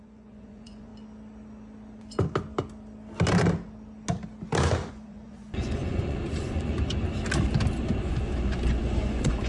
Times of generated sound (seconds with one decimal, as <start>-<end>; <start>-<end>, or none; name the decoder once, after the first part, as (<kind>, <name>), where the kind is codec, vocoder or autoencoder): 0.0-0.9 (vocoder, Vocos); 4.9-7.0; 8.0-9.5